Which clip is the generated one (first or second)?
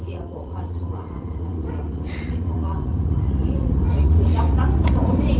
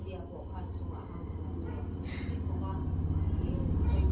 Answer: first